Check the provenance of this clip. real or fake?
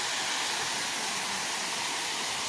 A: real